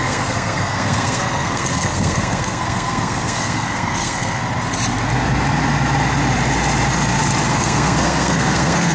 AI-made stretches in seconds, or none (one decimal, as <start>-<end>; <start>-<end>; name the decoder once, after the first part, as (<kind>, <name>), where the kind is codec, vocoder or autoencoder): 0.0-4.4 (codec, SNAC); 7.5-8.9